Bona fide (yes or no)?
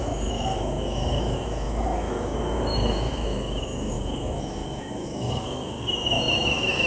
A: no